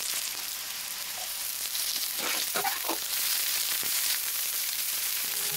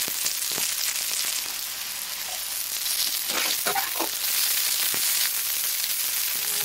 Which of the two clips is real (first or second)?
second